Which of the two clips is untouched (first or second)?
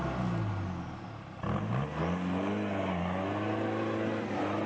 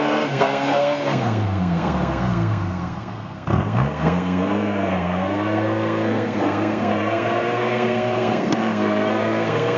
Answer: first